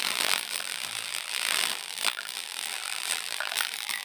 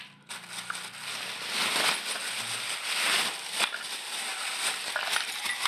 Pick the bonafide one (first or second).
second